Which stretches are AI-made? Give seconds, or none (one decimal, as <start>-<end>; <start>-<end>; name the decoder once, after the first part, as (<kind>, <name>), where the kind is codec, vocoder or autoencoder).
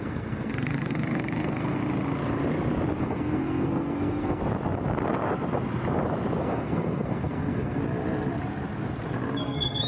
0.0-1.8 (codec, SNAC); 3.0-4.4; 6.4-7.8; 9.4-9.9